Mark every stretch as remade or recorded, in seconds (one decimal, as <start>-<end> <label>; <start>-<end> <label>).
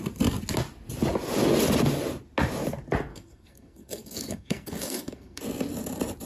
0.0-3.1 recorded; 3.1-5.4 remade; 5.4-6.3 recorded